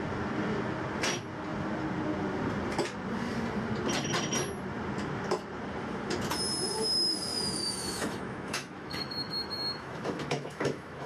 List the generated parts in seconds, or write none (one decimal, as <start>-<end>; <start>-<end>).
7.3-11.1